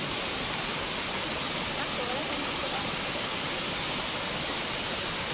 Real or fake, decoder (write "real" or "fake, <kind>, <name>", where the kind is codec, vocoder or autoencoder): real